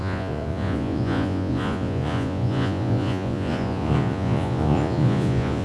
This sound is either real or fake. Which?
fake